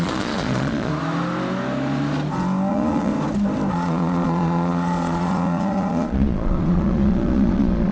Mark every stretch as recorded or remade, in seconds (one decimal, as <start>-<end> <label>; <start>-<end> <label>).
0.0-0.9 remade; 0.9-2.7 recorded; 2.7-3.1 remade; 3.1-3.7 recorded; 3.7-7.9 remade